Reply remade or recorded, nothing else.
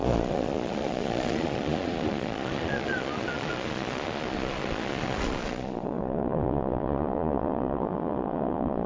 remade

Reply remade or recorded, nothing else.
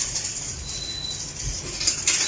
recorded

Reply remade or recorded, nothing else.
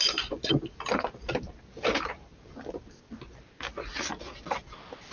recorded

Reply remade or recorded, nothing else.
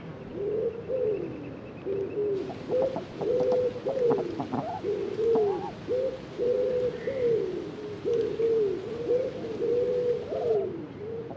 recorded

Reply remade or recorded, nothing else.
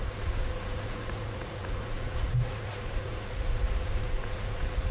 remade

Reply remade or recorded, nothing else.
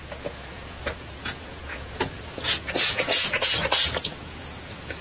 remade